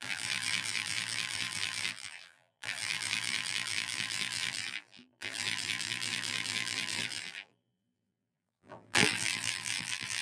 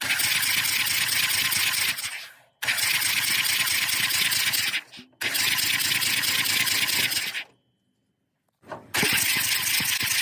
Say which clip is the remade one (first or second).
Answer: first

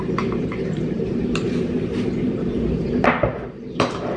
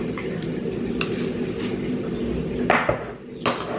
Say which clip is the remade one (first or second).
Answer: first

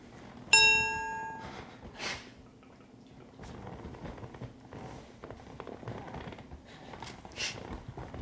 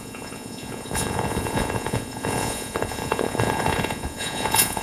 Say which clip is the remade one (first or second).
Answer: second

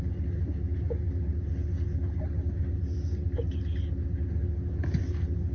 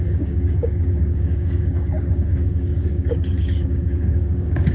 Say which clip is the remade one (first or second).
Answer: second